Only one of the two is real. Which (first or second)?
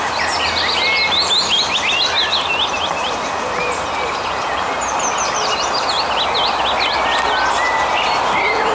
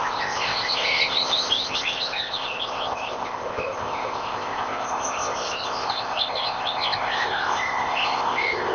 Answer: first